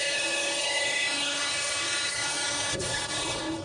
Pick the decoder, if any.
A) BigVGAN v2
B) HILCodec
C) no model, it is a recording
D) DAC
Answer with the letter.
B